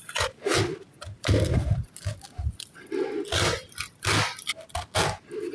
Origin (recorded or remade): recorded